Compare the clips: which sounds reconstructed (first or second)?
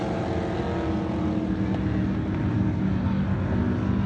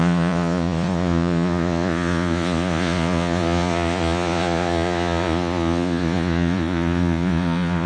second